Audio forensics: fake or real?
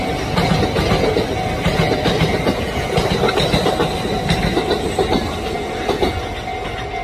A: real